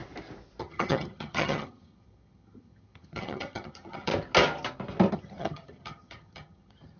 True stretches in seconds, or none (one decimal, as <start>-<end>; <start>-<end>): 0.0-0.6; 4.1-5.1